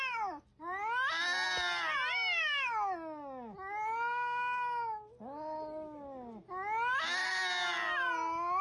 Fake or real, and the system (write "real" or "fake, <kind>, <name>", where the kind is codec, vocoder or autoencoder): real